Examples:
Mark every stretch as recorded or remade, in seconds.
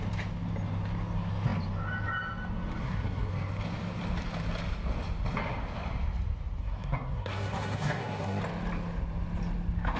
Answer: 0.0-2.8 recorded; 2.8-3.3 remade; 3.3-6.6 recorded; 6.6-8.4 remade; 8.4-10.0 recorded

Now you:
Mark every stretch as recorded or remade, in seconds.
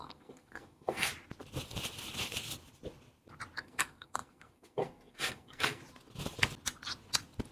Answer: 0.0-1.1 remade; 1.1-3.6 recorded; 3.6-5.8 remade; 5.8-7.5 recorded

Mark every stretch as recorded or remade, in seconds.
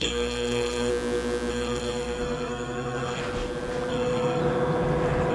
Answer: 0.0-0.9 remade; 0.9-1.5 recorded; 1.5-3.2 remade; 3.2-3.9 recorded; 3.9-4.4 remade; 4.4-5.3 recorded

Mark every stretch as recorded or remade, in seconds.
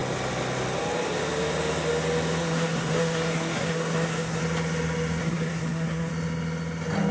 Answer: 0.0-2.4 recorded; 2.4-4.4 remade; 4.4-5.2 recorded; 5.2-6.1 remade; 6.1-7.1 recorded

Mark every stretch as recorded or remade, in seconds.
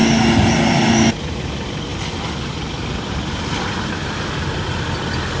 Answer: 0.0-5.4 recorded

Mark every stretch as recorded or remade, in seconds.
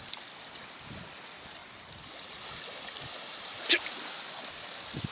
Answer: 0.0-5.1 recorded